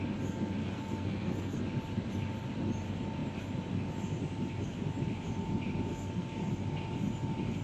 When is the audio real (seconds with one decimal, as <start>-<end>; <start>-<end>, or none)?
0.0-0.6; 1.6-5.9; 6.5-7.6